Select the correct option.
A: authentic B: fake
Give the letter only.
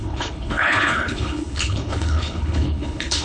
B